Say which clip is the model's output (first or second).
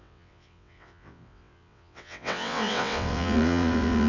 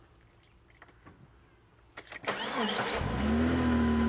first